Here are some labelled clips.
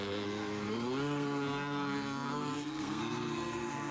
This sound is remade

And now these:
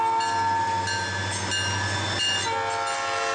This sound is recorded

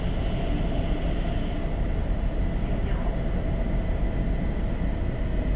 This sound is recorded